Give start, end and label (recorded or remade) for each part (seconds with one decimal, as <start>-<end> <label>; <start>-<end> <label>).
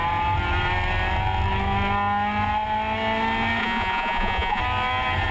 0.0-3.6 recorded; 3.6-4.6 remade; 4.6-5.3 recorded